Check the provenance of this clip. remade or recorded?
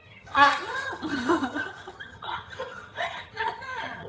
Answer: remade